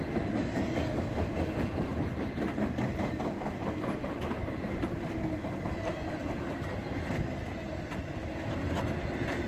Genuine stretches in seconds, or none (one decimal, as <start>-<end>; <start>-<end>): 0.0-1.9; 5.0-6.2; 7.1-8.2; 8.8-9.5